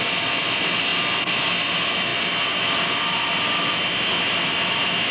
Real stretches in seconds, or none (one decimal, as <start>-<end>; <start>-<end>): 0.0-5.1